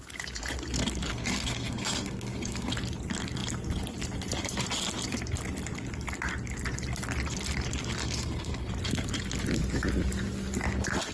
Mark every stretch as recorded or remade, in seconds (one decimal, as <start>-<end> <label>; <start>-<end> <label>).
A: 0.0-1.1 recorded; 1.1-2.7 remade; 2.7-8.0 recorded; 8.0-8.7 remade; 8.7-11.1 recorded